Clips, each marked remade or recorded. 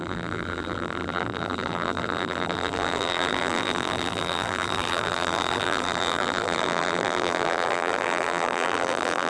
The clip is remade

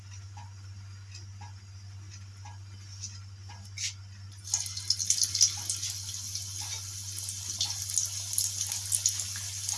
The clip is recorded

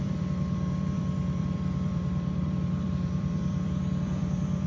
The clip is remade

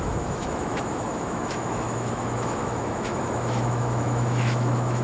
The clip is remade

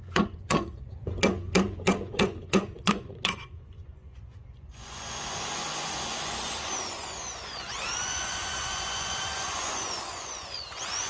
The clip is remade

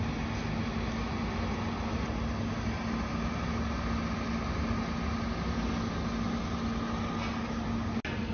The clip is recorded